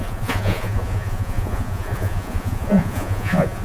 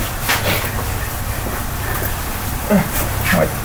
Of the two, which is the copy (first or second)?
first